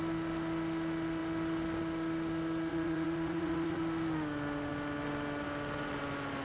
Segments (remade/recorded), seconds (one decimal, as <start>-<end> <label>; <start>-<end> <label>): 0.0-2.7 recorded; 2.7-3.8 remade; 3.8-6.4 recorded